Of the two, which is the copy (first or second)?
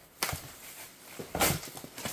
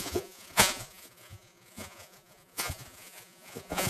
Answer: second